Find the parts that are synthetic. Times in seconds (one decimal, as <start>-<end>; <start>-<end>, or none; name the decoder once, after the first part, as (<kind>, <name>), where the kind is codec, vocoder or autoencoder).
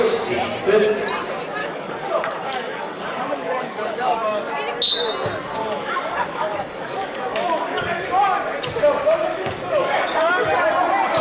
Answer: 1.6-4.5 (codec, DAC); 5.6-8.2; 9.3-10.7